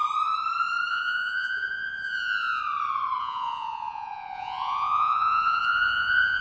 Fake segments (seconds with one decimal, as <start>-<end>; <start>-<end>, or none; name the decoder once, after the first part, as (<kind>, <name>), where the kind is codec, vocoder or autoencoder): 0.9-2.6 (vocoder, Vocos); 3.2-6.4